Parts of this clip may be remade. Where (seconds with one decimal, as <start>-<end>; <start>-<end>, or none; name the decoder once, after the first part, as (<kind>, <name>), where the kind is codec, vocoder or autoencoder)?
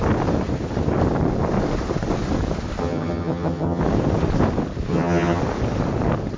2.8-3.8 (vocoder, HiFi-GAN); 4.9-5.4